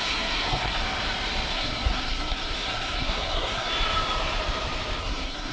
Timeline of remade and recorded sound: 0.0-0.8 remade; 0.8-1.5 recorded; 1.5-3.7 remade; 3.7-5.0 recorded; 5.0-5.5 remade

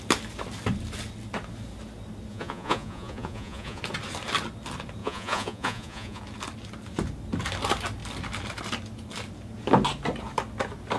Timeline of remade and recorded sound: 0.0-2.3 recorded; 2.3-3.8 remade; 3.8-5.0 recorded; 5.0-6.2 remade; 6.2-11.0 recorded

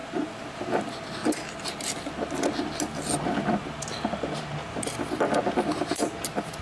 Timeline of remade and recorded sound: 0.0-0.6 remade; 0.6-6.6 recorded